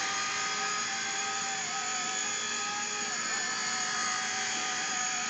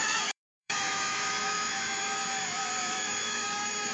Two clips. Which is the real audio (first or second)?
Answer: first